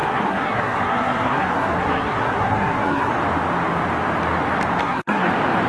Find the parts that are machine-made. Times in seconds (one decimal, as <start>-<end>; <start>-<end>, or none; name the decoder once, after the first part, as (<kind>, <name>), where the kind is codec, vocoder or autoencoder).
0.0-3.1 (codec, SNAC); 4.8-5.3